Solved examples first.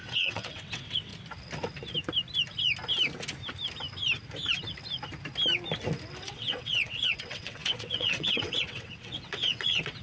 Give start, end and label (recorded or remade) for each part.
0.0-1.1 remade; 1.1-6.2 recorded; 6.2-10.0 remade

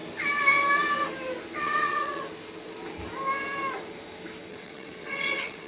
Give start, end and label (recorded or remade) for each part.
0.0-1.6 recorded; 1.6-2.2 remade; 2.2-4.5 recorded; 4.5-5.7 remade

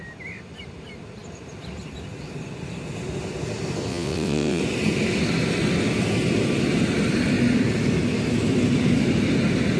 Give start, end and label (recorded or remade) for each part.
0.0-3.9 recorded; 3.9-4.6 remade; 4.6-9.8 recorded

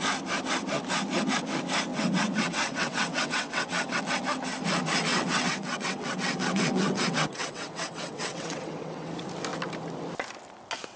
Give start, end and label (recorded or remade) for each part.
0.0-1.9 recorded; 1.9-4.0 remade; 4.0-5.1 recorded; 5.1-9.1 remade; 9.1-11.0 recorded

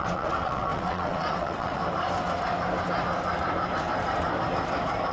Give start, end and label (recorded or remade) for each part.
0.0-1.8 remade; 1.8-5.1 recorded

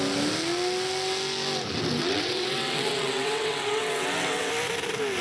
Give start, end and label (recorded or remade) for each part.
0.0-2.0 recorded; 2.0-4.5 remade; 4.5-5.2 recorded

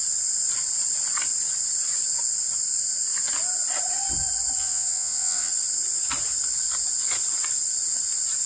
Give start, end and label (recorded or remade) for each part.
0.0-4.6 recorded; 4.6-5.5 remade; 5.5-8.5 recorded

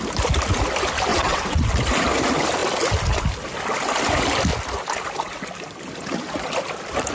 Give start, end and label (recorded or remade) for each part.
0.0-1.1 recorded; 1.1-1.6 remade; 1.6-7.1 recorded